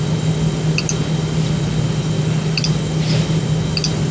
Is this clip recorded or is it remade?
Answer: recorded